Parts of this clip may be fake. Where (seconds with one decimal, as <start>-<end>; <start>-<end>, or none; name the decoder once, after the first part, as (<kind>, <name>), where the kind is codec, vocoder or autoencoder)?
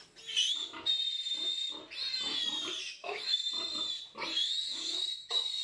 3.0-3.5 (autoencoder, DAC-VAE); 4.7-5.6